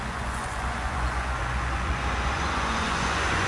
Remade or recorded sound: remade